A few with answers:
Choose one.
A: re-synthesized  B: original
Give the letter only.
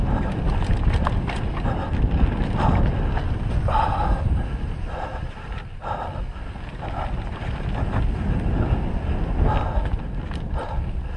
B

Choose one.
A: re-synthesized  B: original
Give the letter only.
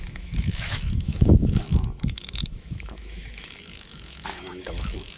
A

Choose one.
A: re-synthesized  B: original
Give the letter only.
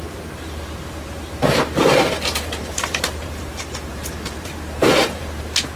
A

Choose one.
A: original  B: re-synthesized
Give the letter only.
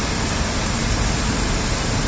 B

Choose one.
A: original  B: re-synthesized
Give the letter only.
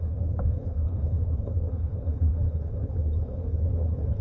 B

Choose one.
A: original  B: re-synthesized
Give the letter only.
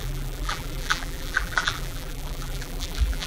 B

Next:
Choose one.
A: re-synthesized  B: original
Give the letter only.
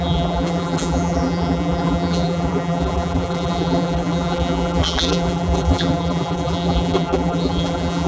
A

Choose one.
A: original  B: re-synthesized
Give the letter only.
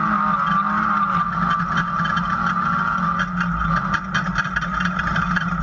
A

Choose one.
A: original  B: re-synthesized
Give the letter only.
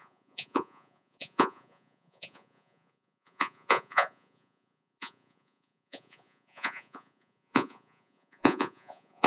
B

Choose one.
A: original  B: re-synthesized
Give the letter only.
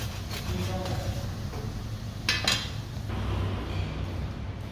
A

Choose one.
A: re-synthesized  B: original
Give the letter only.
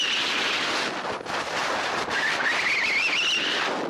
B